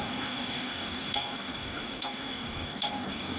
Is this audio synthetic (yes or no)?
yes